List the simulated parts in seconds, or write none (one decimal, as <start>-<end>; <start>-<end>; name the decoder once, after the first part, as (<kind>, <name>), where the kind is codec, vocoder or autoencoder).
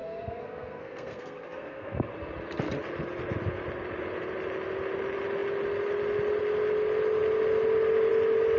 0.0-2.1 (codec, SNAC)